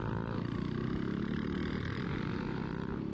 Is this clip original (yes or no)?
no